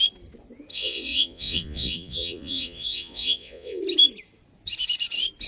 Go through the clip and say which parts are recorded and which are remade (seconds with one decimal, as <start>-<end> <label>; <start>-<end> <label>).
0.0-0.7 recorded; 0.7-3.8 remade; 3.8-5.5 recorded